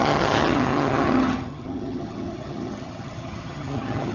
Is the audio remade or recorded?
remade